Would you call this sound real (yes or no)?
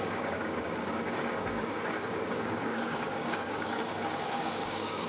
no